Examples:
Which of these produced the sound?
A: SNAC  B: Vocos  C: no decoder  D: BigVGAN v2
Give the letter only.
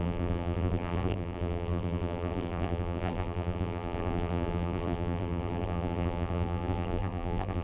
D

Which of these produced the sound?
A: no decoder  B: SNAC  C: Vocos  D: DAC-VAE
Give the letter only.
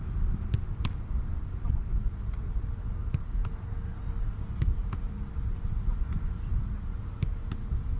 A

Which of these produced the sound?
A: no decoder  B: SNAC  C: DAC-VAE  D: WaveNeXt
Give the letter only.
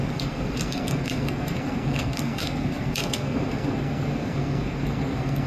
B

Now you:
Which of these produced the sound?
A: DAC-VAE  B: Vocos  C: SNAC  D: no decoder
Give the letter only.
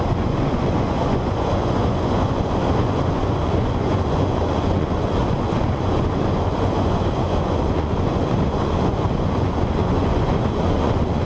B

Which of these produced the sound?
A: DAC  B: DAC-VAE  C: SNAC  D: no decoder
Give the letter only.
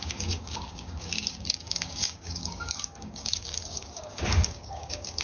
A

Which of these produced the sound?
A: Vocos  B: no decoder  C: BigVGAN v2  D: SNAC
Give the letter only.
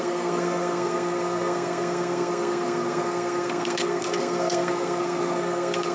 D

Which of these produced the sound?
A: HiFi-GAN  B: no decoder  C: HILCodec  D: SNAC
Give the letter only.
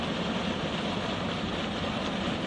B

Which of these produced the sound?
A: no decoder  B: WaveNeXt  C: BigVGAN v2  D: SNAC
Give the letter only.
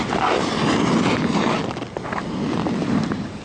A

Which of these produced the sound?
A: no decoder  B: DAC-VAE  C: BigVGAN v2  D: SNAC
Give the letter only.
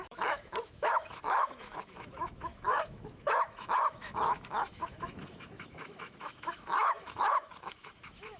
B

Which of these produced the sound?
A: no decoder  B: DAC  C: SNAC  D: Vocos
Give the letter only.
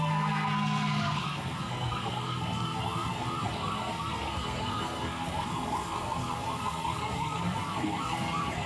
C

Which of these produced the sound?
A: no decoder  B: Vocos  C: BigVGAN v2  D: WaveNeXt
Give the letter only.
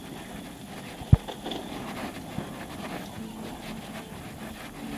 A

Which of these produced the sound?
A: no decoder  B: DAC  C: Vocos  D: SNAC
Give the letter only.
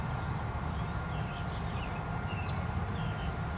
A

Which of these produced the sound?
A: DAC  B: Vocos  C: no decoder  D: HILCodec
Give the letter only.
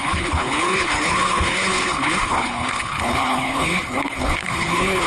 D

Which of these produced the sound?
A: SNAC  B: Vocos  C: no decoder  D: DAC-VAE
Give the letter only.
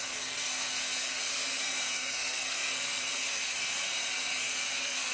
A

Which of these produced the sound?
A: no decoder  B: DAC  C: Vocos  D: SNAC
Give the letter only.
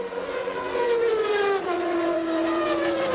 C